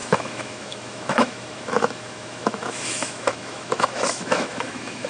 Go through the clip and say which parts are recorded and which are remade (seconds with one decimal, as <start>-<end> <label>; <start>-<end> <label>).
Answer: 0.0-5.1 remade